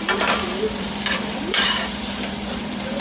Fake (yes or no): yes